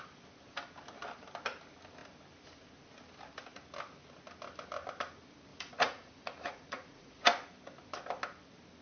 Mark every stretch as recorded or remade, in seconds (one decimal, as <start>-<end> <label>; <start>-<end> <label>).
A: 0.0-5.5 recorded; 5.5-7.2 remade; 7.2-8.8 recorded